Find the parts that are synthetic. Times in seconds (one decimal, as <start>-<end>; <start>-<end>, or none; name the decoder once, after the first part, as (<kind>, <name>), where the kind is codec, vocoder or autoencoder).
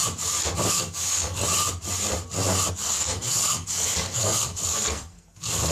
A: 0.7-1.4 (codec, SNAC); 2.7-5.7